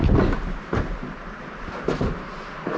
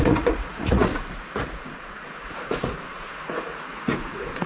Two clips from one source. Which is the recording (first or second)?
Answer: first